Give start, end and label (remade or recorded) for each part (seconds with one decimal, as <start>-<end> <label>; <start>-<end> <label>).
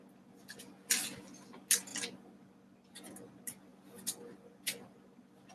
0.0-5.5 recorded